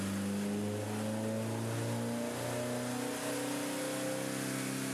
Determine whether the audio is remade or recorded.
recorded